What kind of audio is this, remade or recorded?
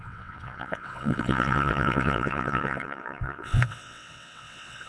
remade